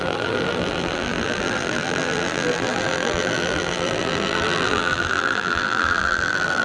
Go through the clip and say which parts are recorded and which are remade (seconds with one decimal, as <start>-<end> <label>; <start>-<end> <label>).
0.0-6.6 remade